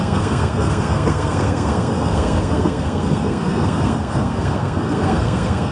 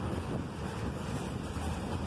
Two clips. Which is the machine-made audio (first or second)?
first